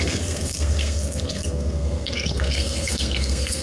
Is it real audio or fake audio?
fake